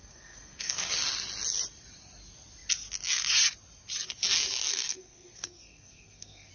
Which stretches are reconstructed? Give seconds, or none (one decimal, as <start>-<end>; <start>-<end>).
0.0-0.9; 4.7-6.5